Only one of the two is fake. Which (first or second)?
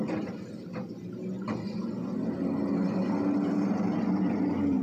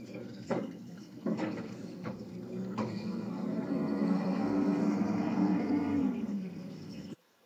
second